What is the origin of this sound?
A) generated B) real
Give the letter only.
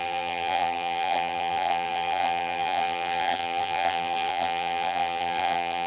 A